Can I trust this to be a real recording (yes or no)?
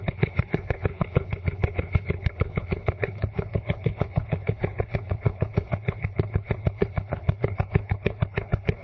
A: no